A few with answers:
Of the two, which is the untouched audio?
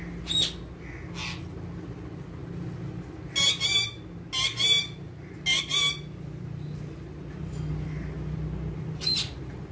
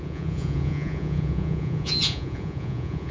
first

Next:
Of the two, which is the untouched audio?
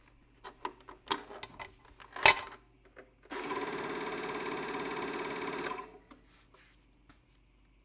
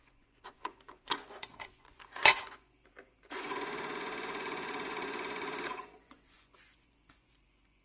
first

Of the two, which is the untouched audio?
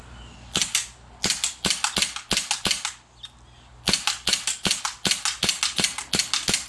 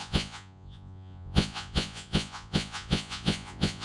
first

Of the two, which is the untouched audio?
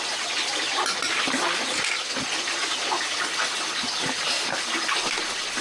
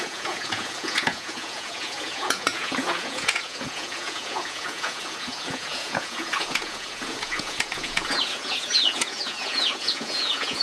first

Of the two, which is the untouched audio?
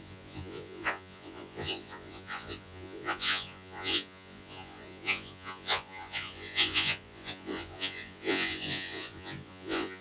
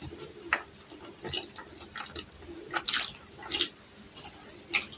second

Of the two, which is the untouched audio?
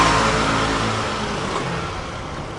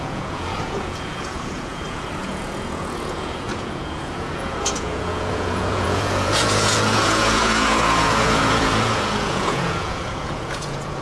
first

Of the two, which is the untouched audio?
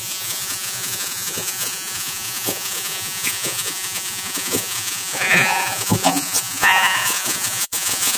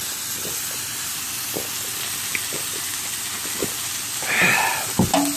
second